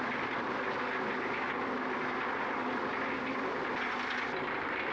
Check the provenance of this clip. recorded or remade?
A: recorded